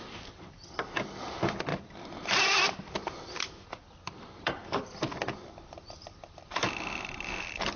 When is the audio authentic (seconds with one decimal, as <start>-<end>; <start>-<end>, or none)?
none